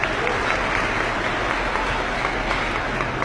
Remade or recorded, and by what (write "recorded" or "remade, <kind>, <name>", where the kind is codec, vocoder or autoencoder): recorded